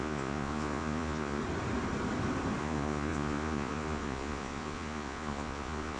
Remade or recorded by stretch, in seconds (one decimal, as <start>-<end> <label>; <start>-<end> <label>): 0.0-1.4 remade; 1.4-2.6 recorded; 2.6-6.0 remade